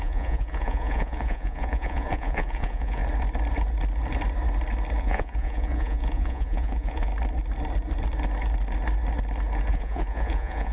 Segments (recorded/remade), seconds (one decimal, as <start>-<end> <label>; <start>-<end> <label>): 0.0-3.0 remade; 3.0-5.0 recorded; 5.0-7.1 remade; 7.1-9.7 recorded; 9.7-10.7 remade